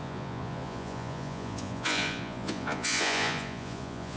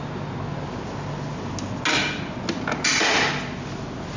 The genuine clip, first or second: second